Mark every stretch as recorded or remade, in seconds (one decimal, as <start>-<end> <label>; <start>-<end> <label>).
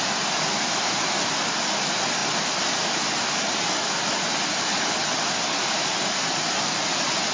0.0-7.3 recorded